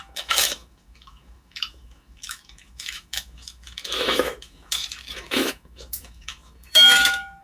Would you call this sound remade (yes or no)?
yes